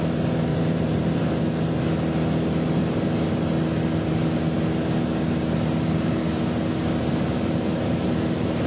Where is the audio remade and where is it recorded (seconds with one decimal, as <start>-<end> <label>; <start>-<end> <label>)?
0.0-0.5 recorded; 0.5-1.4 remade; 1.4-7.1 recorded; 7.1-8.7 remade